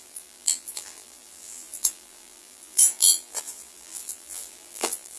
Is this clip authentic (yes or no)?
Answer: no